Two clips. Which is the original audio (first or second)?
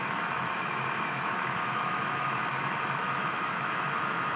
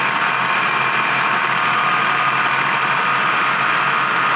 second